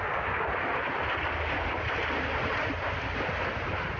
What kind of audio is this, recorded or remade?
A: remade